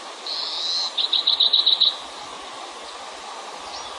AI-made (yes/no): no